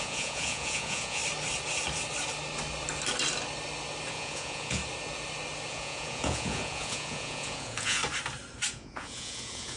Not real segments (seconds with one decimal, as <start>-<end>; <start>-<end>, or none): 0.0-1.2; 4.1-4.8; 5.7-8.0; 8.7-9.8